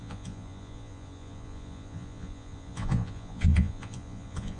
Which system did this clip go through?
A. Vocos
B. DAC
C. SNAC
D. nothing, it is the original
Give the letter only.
A